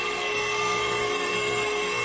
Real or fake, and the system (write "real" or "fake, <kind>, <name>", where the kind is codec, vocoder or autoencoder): fake, codec, SNAC